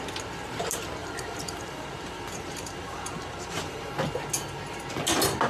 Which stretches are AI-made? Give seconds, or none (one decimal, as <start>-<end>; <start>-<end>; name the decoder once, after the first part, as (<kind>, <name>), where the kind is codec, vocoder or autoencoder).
1.0-3.9 (vocoder, BigVGAN v2)